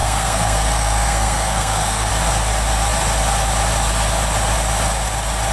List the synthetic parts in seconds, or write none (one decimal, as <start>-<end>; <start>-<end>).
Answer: 0.0-2.1